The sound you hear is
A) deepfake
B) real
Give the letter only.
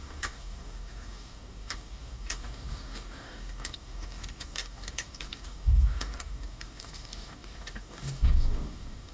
A